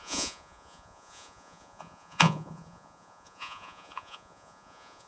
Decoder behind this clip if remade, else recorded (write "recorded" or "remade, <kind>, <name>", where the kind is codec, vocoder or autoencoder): remade, vocoder, Vocos